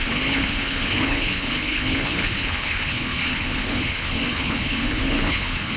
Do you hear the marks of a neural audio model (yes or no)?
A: yes